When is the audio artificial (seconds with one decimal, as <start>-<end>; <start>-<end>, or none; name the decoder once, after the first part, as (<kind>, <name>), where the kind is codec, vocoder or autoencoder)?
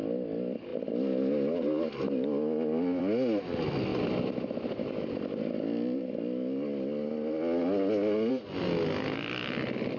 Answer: none